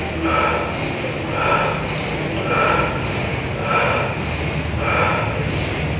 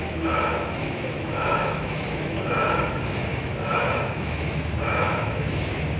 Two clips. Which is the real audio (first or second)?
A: first